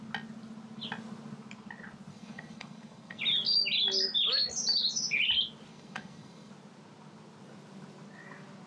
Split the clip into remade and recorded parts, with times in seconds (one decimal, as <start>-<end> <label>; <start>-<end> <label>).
0.0-2.1 recorded; 2.1-3.2 remade; 3.2-5.7 recorded; 5.7-6.5 remade; 6.5-8.7 recorded